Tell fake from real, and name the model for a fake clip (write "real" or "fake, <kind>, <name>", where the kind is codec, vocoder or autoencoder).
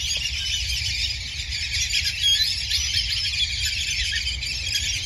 real